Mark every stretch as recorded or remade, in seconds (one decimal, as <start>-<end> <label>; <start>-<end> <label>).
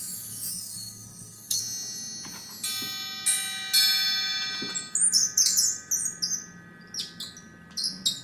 0.0-0.5 recorded; 0.5-1.6 remade; 1.6-8.2 recorded